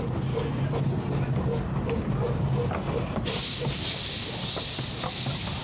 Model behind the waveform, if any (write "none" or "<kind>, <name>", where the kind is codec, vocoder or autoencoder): none